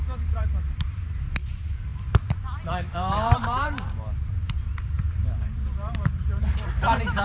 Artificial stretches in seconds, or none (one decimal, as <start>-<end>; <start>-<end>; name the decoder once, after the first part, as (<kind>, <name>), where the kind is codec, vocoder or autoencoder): 0.0-7.2 (vocoder, BigVGAN v2)